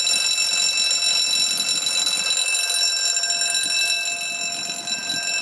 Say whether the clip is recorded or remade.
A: recorded